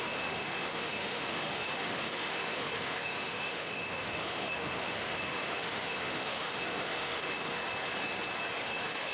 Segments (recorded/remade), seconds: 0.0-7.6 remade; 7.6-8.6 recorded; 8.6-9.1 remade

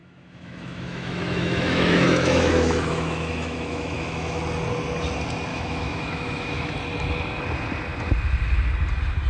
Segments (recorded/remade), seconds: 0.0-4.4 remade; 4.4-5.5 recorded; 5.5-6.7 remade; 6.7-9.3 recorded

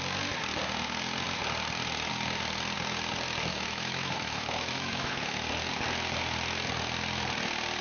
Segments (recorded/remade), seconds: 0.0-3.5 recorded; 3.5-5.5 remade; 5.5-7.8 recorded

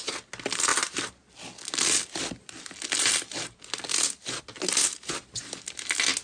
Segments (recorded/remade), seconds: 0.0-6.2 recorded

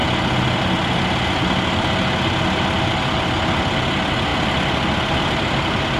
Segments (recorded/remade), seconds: 0.0-6.0 recorded

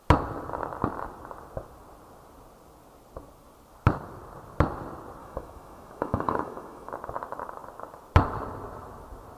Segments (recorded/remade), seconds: 0.0-5.2 recorded; 5.2-6.9 remade; 6.9-9.4 recorded

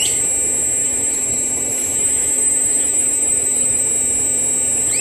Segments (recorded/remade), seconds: 0.0-0.8 recorded; 0.8-3.8 remade; 3.8-5.0 recorded